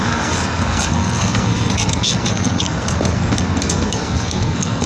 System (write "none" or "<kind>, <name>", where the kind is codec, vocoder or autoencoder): codec, SNAC